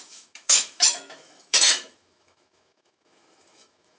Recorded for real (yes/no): no